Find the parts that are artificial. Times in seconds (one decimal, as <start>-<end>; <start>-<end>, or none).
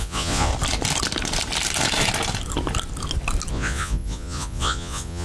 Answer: 0.0-0.5; 3.5-5.2